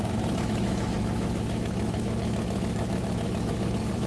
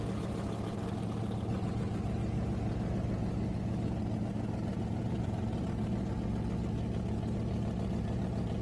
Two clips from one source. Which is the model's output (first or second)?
first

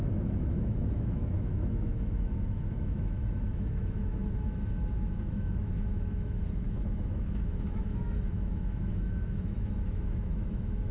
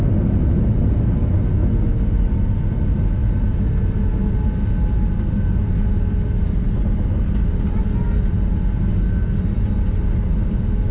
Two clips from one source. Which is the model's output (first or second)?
first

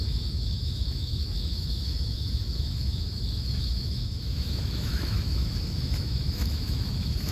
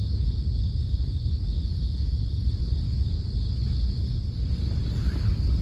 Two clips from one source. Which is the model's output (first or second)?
first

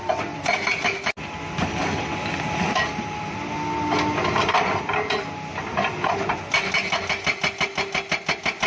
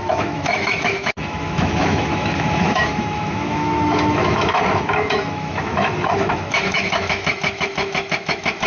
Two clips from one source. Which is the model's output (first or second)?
second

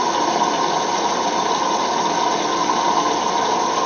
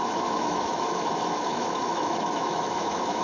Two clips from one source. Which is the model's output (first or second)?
second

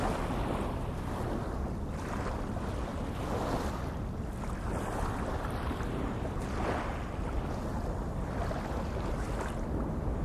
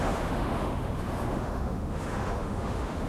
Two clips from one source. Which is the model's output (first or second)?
second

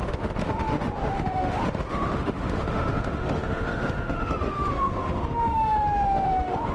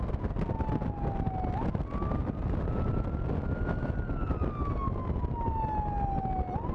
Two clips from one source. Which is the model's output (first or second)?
first